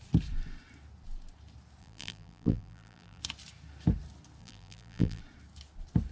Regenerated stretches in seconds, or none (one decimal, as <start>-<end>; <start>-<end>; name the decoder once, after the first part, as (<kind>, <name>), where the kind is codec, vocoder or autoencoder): 1.8-3.2 (vocoder, BigVGAN v2); 4.4-5.2